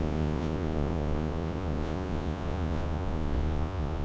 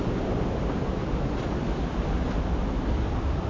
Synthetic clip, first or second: first